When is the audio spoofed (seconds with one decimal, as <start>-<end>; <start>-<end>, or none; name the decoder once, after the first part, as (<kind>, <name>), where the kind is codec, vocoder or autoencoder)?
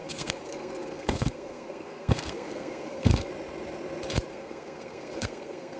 0.0-3.3 (codec, SNAC); 4.3-5.8